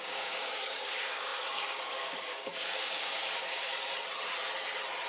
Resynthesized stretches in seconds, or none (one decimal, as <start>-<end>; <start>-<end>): 0.0-3.7